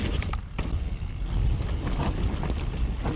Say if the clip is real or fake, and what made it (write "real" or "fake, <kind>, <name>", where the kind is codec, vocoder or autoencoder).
real